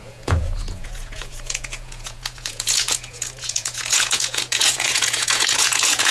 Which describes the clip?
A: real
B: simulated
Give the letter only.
B